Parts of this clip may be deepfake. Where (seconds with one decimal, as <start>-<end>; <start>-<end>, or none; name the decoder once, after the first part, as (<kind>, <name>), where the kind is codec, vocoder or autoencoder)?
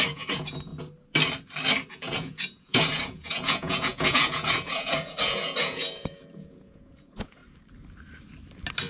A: 0.0-0.7 (vocoder, Vocos); 1.9-7.4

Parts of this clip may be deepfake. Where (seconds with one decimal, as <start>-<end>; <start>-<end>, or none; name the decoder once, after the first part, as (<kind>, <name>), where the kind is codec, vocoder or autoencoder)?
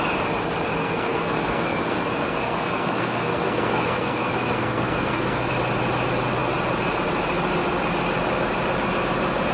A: 0.8-5.5 (codec, SNAC)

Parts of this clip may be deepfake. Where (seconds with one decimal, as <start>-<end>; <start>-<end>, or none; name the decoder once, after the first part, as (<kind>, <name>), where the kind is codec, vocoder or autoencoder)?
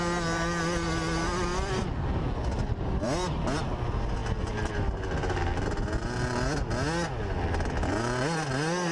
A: none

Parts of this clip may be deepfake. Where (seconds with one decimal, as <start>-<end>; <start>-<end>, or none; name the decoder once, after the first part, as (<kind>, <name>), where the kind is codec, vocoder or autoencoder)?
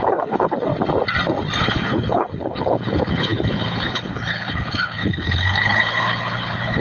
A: 0.0-0.7 (codec, HILCodec); 1.6-6.8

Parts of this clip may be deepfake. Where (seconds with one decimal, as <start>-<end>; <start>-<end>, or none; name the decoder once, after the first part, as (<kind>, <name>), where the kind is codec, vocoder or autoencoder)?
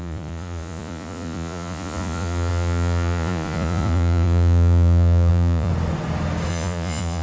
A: 0.0-5.7 (vocoder, Vocos); 6.5-7.2